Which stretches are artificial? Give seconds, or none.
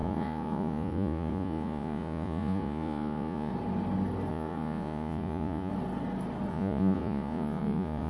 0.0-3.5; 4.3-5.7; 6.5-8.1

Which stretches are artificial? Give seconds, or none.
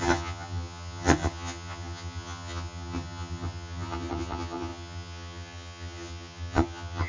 0.0-7.1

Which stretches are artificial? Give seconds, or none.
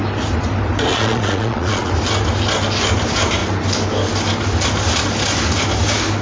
0.9-1.9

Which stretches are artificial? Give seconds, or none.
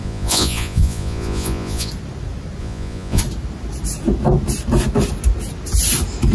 0.0-1.9; 2.6-3.2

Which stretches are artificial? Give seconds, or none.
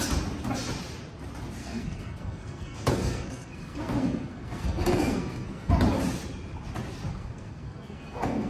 1.6-5.7; 7.1-8.5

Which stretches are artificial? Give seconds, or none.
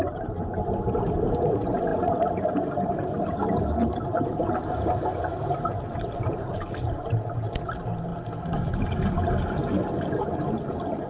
none